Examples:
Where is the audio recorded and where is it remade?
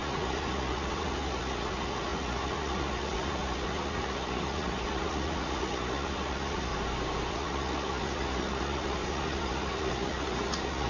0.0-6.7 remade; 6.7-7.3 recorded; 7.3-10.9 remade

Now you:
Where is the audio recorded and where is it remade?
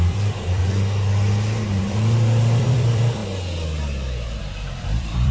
0.0-0.6 remade; 0.6-1.8 recorded; 1.8-3.2 remade; 3.2-4.4 recorded; 4.4-5.3 remade